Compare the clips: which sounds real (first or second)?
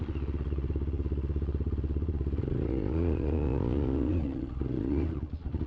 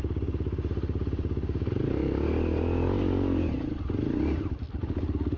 second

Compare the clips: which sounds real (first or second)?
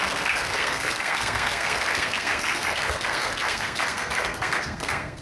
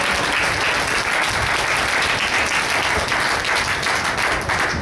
second